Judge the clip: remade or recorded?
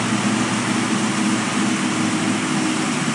recorded